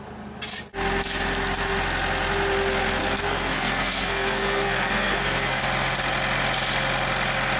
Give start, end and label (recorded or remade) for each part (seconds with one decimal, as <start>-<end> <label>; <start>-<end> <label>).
0.0-3.0 recorded; 3.0-5.6 remade; 5.6-7.6 recorded